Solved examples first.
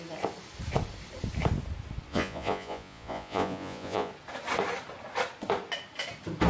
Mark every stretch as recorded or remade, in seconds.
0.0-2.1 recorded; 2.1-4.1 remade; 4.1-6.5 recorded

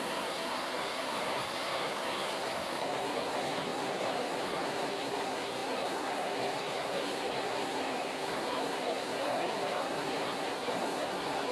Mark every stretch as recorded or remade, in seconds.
0.0-11.5 remade

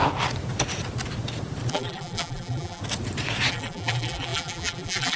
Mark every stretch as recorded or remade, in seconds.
0.0-1.7 recorded; 1.7-2.8 remade; 2.8-3.5 recorded; 3.5-5.2 remade